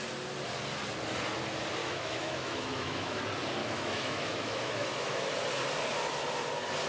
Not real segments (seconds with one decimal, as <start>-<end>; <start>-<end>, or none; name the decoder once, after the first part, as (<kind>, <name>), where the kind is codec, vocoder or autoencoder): 1.8-3.2 (autoencoder, DAC-VAE); 3.6-5.3